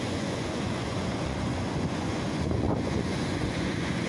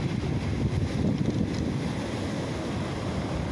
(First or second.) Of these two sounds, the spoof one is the first